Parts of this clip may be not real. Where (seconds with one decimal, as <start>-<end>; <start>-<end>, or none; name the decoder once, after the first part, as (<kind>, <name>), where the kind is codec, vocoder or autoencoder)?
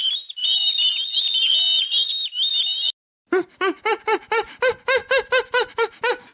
none